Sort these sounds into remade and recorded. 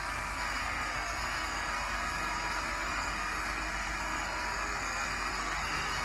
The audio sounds remade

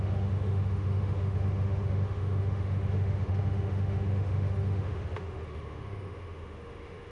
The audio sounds remade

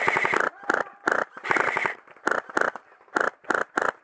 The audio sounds recorded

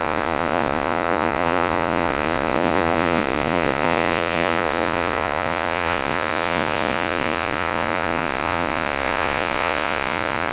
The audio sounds remade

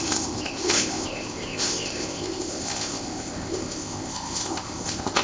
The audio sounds remade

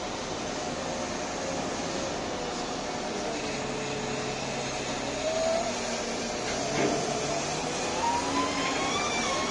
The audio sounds recorded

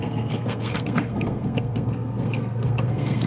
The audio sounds remade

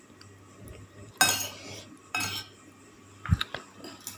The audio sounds recorded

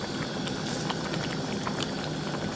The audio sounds recorded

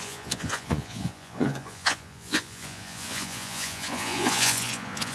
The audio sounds remade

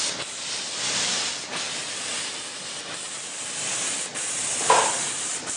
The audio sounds recorded